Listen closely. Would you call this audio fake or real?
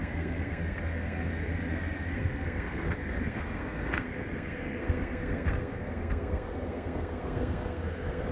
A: fake